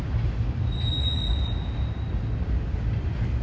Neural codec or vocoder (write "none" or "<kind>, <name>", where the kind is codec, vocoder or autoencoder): none